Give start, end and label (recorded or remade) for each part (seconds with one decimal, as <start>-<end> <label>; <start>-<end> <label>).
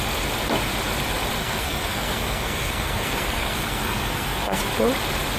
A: 0.0-1.4 recorded; 1.4-4.6 remade; 4.6-5.4 recorded